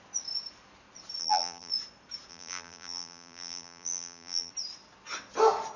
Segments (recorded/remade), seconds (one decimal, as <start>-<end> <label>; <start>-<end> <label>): 0.0-1.2 recorded; 1.2-1.7 remade; 1.7-2.3 recorded; 2.3-4.5 remade; 4.5-5.8 recorded